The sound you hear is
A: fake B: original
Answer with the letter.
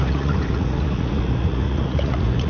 A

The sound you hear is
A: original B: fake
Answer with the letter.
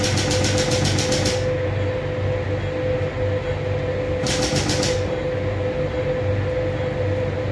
A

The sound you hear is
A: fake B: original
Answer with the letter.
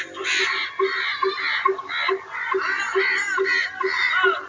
B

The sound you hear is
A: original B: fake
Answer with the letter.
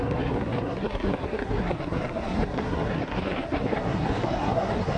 B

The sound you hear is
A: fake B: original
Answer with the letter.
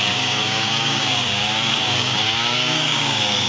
A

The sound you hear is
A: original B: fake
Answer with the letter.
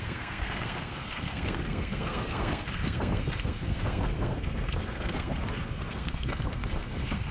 B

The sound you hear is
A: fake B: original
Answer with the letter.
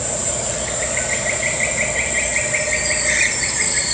B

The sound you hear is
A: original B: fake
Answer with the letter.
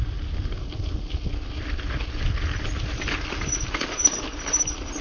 A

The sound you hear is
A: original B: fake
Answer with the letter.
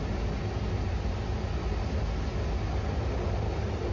A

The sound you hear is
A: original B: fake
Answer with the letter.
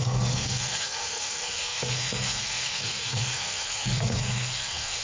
B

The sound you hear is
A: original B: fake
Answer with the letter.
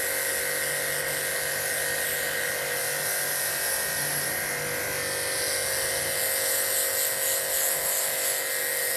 A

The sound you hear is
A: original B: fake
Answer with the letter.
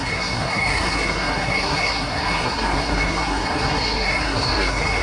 B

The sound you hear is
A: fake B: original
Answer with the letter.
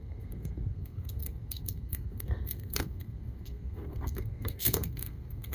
A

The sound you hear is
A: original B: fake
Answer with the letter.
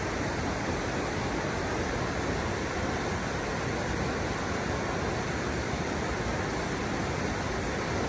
A